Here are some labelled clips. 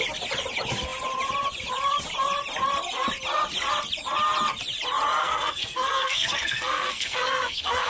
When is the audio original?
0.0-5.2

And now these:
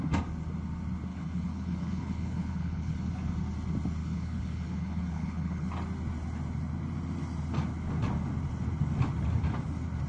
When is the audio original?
0.0-1.1; 3.1-4.0; 5.7-10.1

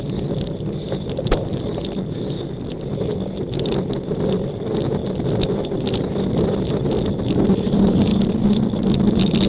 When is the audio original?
0.0-9.5

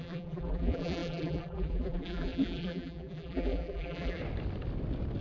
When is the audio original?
4.2-5.2

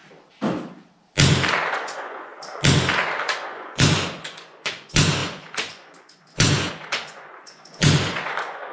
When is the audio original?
0.0-1.7; 2.3-3.2

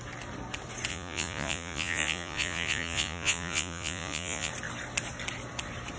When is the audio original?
0.0-0.9; 4.5-6.0